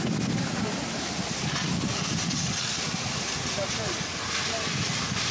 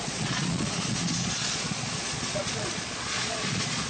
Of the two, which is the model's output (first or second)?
second